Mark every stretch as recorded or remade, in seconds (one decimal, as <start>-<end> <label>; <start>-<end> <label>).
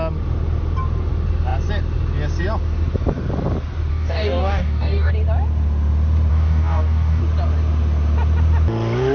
0.0-3.9 recorded; 3.9-5.1 remade; 5.1-6.3 recorded; 6.3-7.2 remade; 7.2-9.1 recorded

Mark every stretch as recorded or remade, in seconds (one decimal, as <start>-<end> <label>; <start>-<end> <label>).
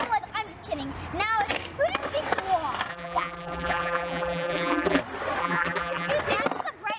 0.0-2.9 recorded; 2.9-5.0 remade; 5.0-5.4 recorded; 5.4-6.1 remade; 6.1-7.0 recorded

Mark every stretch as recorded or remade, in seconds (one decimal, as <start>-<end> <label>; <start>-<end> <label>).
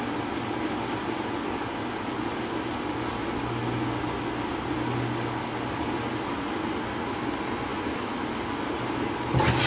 0.0-9.7 recorded